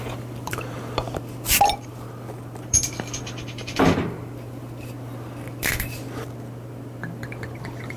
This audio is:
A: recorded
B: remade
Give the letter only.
B